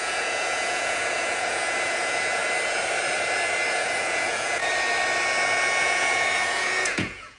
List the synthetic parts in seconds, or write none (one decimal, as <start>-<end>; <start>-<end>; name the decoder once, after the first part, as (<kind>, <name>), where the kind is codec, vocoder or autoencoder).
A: 0.0-2.4 (vocoder, Vocos); 3.7-4.6; 5.8-7.4